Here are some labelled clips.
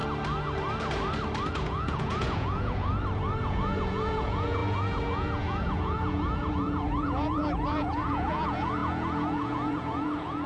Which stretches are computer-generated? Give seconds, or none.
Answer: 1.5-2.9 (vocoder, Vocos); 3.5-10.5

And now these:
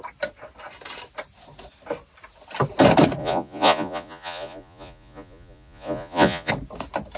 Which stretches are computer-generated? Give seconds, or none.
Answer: 3.2-6.5 (vocoder, Vocos)

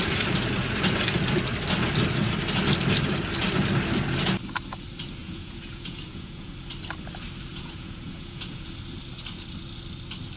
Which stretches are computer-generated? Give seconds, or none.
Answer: 5.2-6.5 (vocoder, Vocos); 7.5-8.7

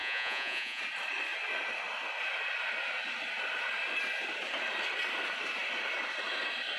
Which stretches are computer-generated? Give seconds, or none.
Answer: 0.0-0.8 (vocoder, Vocos)

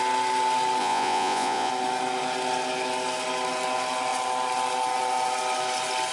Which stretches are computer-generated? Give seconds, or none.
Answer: 0.8-1.7 (vocoder, Vocos)

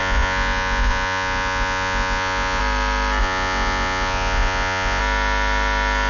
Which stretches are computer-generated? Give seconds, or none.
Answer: 0.0-2.6 (vocoder, Vocos); 3.2-5.0

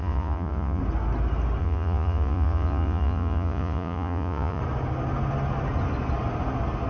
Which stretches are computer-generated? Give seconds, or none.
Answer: 0.0-0.8 (vocoder, Vocos); 1.6-4.6